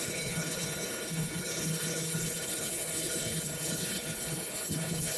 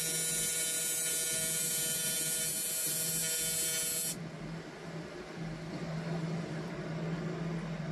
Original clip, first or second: second